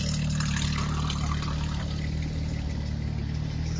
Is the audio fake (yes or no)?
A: no